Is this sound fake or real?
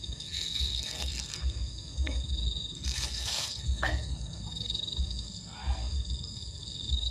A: fake